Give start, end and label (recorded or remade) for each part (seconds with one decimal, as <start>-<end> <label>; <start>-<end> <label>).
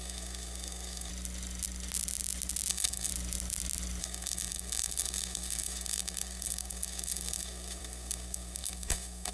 0.0-1.1 remade; 1.1-2.7 recorded; 2.7-3.1 remade; 3.1-4.0 recorded; 4.0-9.3 remade